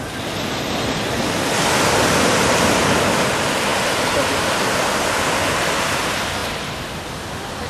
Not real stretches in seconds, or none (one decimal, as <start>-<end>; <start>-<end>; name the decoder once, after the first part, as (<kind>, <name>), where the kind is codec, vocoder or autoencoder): none